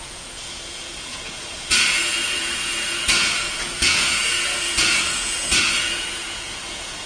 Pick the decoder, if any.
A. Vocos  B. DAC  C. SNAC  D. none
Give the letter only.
A